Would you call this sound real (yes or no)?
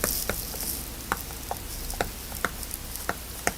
yes